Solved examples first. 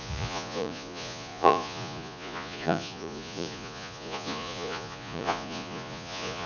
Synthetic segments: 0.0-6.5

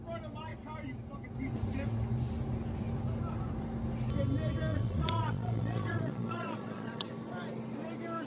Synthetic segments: 4.7-7.1

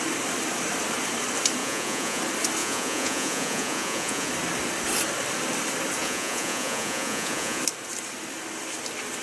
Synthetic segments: 1.6-2.2; 2.6-4.3; 6.0-7.6

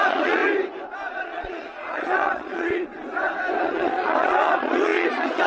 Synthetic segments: 0.0-0.4; 1.1-2.9; 3.6-5.5

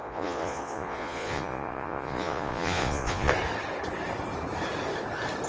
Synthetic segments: 0.0-3.3

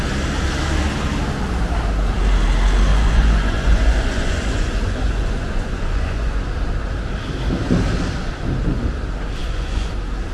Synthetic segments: 2.9-6.4; 9.4-9.9